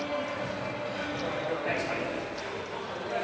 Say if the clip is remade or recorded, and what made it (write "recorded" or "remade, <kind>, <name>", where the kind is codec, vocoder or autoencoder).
recorded